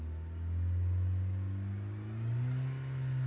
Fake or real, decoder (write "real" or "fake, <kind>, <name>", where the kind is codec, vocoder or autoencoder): real